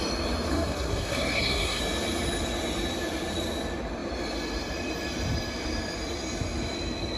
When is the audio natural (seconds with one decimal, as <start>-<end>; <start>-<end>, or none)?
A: 0.0-0.5; 1.8-7.2

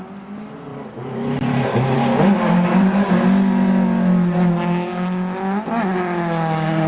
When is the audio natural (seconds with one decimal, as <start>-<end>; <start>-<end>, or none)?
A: 0.0-0.7; 3.1-6.9

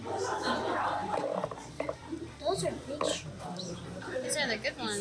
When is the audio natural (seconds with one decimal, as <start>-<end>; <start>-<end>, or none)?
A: 0.0-1.0; 4.0-5.0

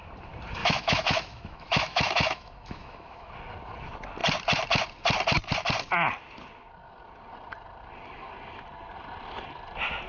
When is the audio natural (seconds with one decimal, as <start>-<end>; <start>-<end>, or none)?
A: 0.0-0.6; 3.3-10.1

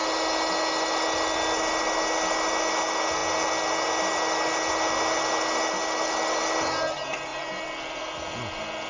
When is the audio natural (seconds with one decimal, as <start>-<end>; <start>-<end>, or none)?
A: 0.0-8.9

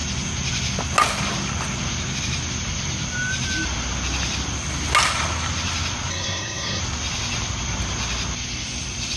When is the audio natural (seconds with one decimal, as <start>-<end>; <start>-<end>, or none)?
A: 0.0-6.1; 6.8-9.2